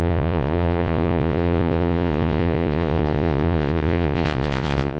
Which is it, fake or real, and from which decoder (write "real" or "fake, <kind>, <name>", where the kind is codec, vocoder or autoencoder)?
fake, vocoder, Vocos